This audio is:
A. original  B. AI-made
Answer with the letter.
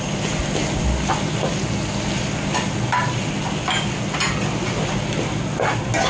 A